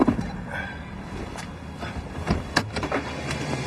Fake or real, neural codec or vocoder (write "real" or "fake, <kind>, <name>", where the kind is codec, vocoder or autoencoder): real